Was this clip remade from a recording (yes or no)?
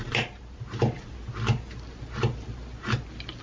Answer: no